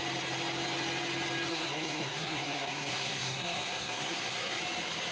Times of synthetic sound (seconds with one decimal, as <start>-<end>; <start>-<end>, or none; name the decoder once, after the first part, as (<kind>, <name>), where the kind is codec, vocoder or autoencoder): 1.5-4.6 (codec, SNAC)